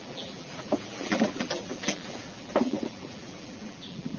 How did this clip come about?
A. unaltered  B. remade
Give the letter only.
B